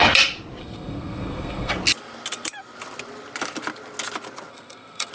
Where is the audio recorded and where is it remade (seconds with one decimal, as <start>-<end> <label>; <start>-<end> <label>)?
0.0-0.6 recorded; 0.6-1.7 remade; 1.7-4.5 recorded; 4.5-5.1 remade